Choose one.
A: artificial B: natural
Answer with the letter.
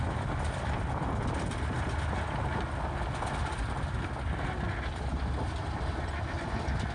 B